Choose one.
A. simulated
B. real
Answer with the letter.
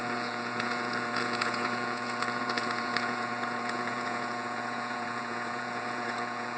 A